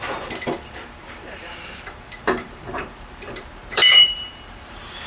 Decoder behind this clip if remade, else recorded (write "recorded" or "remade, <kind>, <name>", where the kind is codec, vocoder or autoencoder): remade, vocoder, BigVGAN v2